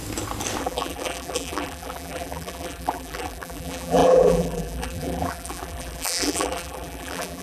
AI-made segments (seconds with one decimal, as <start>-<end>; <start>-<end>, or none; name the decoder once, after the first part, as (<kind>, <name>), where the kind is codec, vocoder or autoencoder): 0.6-7.4 (vocoder, BigVGAN v2)